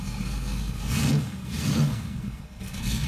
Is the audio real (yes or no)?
no